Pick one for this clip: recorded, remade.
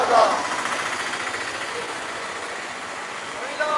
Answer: remade